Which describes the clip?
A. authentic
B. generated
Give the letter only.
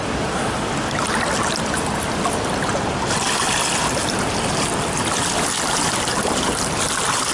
A